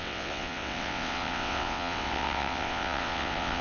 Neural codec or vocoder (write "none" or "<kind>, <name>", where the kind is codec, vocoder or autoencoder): vocoder, WaveNeXt